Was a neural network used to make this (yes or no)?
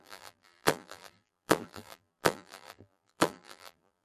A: yes